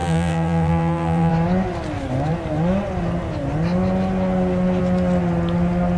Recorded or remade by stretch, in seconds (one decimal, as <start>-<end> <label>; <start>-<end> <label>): 0.0-1.3 remade; 1.3-6.0 recorded